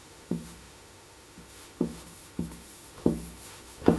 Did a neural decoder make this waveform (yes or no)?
yes